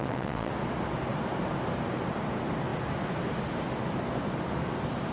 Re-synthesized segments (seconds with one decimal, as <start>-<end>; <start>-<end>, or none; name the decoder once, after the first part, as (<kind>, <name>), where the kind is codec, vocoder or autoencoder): 0.0-0.5 (vocoder, WaveNeXt)